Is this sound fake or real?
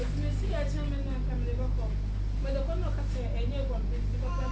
real